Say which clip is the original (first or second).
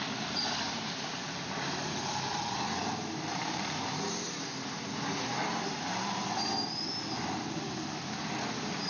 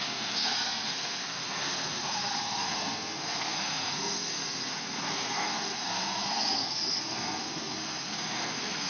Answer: first